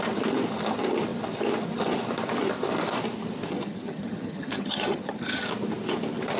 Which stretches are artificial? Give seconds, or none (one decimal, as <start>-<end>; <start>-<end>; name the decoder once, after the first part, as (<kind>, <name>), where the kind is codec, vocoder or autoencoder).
3.5-5.4 (vocoder, HiFi-GAN)